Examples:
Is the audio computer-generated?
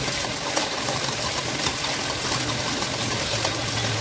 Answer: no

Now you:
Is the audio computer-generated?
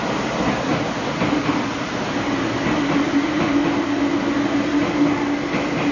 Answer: no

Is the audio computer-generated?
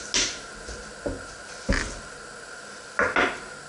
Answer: no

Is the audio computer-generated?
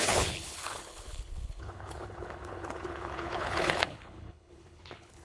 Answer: yes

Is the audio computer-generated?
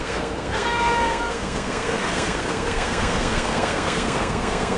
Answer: yes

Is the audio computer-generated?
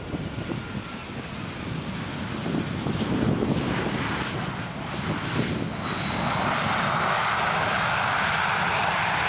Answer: no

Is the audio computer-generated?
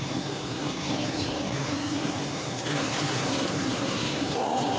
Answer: yes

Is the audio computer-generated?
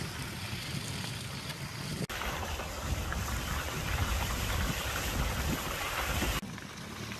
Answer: no